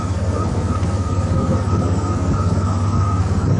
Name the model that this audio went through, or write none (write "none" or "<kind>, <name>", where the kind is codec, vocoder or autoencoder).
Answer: codec, SNAC